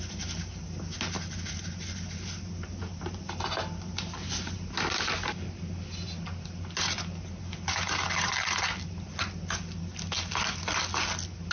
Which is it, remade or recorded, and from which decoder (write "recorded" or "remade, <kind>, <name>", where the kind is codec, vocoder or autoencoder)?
recorded